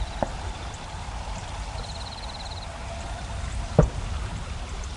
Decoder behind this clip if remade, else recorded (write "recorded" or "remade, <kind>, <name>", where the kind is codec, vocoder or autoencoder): recorded